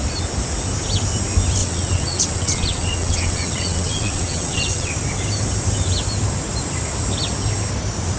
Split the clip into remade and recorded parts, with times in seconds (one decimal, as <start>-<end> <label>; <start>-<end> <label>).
0.0-1.6 recorded; 1.6-4.9 remade; 4.9-8.2 recorded

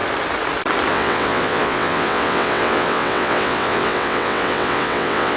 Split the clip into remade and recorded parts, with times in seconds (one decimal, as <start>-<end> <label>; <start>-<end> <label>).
0.0-0.9 recorded; 0.9-5.4 remade